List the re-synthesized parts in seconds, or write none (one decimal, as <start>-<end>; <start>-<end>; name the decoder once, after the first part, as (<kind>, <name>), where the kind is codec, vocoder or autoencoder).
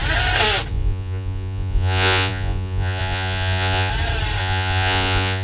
0.7-3.9 (vocoder, Vocos); 4.4-5.4